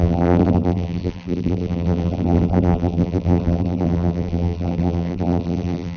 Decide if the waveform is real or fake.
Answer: fake